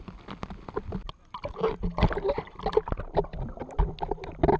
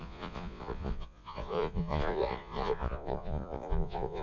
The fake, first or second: second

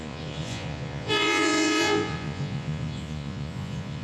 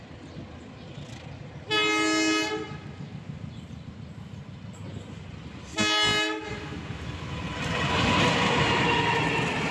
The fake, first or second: first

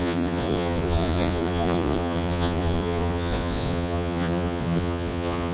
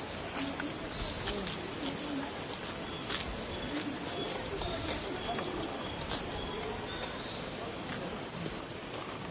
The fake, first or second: first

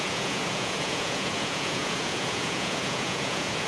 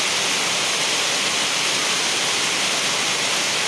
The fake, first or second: first